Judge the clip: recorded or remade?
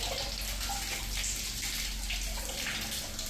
recorded